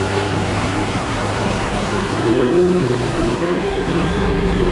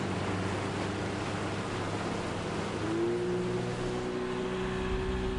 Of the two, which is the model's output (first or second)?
first